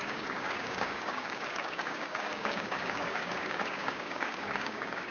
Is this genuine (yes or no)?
no